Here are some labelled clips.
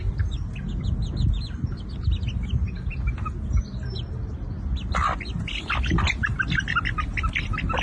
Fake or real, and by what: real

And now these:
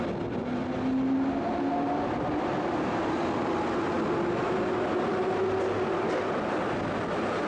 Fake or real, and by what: real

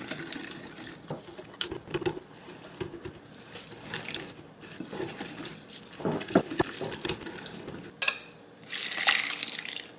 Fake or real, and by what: real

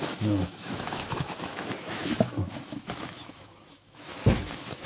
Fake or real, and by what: fake, autoencoder, DAC-VAE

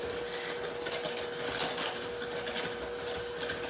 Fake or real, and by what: real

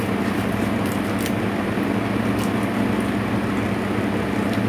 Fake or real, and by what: real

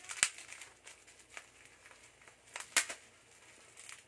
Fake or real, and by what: real